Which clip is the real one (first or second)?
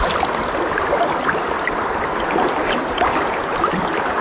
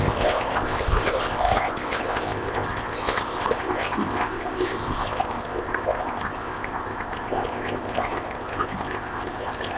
first